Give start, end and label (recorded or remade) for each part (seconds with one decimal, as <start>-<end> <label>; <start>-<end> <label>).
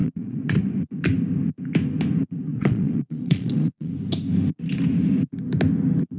0.0-0.6 remade; 0.6-2.5 recorded; 2.5-3.9 remade; 3.9-6.2 recorded